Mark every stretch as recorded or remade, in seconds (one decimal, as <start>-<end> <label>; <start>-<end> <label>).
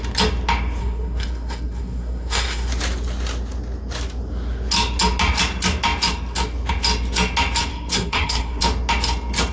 0.0-0.8 recorded; 0.8-2.7 remade; 2.7-7.7 recorded; 7.7-8.6 remade; 8.6-9.5 recorded